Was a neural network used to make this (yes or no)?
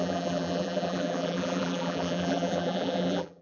yes